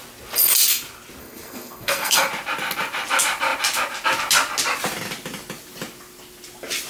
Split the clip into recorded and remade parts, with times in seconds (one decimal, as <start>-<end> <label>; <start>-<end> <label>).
0.0-1.2 recorded; 1.2-2.3 remade; 2.3-6.9 recorded